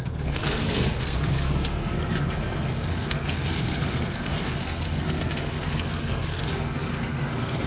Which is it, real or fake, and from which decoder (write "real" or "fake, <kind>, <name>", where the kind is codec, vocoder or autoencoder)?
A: fake, codec, SNAC